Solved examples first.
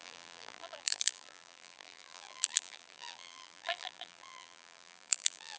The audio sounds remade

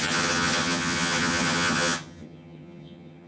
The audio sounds remade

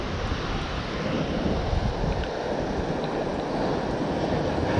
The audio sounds recorded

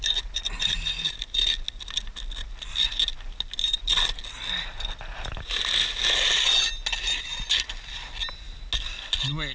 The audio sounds recorded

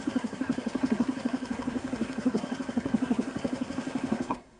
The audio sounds remade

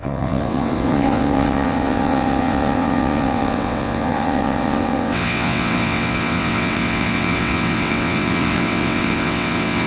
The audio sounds remade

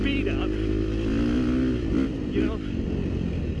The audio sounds recorded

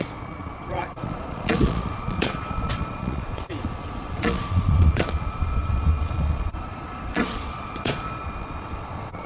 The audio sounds remade